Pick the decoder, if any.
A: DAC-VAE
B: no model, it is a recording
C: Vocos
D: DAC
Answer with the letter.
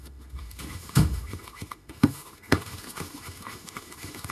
A